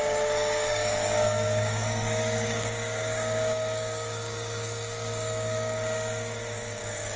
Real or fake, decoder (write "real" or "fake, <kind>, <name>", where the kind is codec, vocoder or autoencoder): fake, codec, DAC